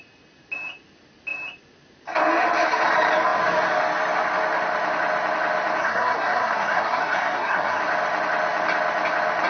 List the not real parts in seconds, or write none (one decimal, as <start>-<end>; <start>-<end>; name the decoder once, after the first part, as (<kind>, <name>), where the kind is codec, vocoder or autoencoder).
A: 5.8-7.8 (codec, SNAC)